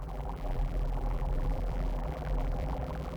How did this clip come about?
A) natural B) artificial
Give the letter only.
B